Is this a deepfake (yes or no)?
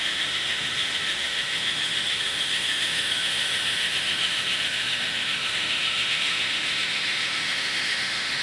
yes